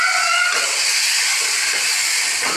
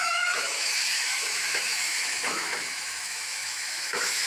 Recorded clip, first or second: first